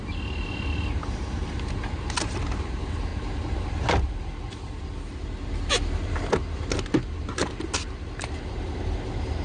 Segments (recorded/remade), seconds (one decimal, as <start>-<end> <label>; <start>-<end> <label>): 0.0-9.4 recorded